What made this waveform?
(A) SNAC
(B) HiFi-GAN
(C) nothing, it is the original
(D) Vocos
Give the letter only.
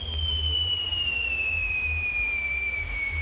C